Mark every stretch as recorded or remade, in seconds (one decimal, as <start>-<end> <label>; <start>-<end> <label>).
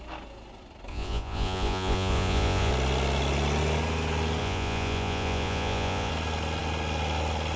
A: 0.0-0.9 recorded; 0.9-2.7 remade; 2.7-4.4 recorded; 4.4-6.1 remade; 6.1-7.6 recorded